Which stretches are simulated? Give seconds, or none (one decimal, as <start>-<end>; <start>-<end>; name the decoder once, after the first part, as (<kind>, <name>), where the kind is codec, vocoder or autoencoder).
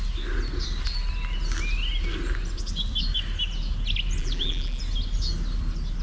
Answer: 4.2-4.8 (vocoder, BigVGAN v2)